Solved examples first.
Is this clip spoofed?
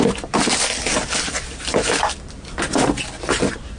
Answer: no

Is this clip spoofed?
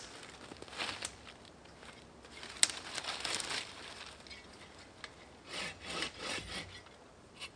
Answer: no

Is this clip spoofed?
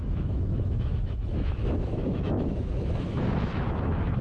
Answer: yes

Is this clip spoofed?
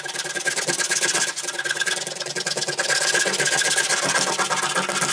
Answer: no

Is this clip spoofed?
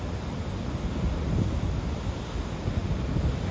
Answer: no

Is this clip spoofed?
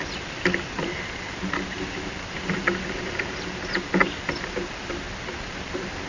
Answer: no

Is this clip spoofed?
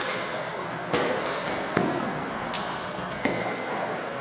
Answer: yes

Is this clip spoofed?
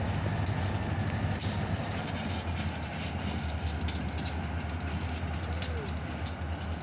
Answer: no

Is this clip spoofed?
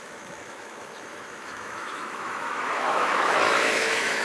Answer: yes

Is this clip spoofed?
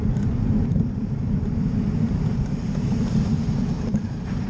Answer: yes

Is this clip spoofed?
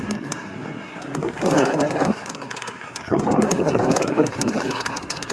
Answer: yes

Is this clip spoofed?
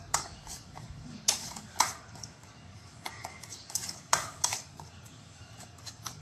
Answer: yes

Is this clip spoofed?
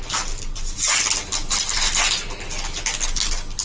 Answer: no